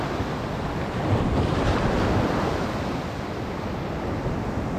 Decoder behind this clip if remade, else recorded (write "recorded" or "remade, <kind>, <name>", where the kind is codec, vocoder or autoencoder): recorded